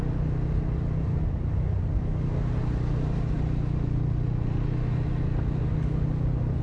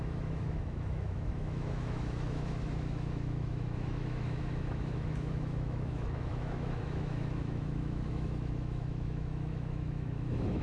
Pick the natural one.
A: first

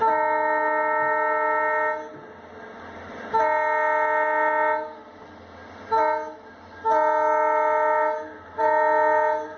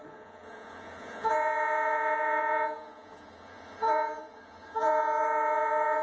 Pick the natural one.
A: first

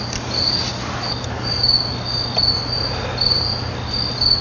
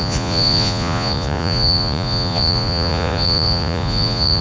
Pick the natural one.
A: first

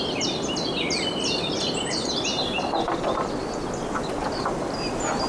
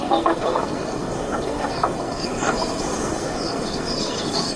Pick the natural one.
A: first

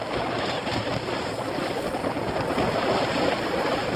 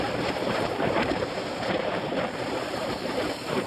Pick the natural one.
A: first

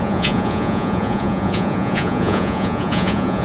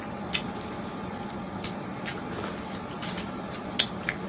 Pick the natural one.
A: second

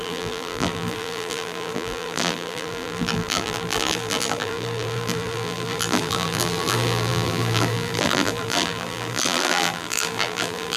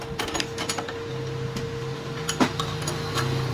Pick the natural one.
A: second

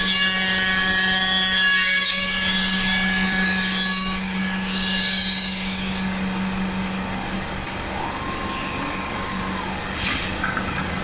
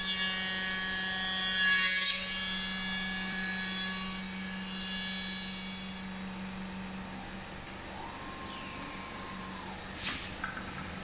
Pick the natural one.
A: second